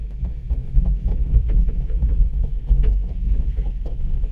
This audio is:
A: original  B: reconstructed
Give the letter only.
B